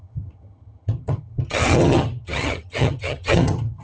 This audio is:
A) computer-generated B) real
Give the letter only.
A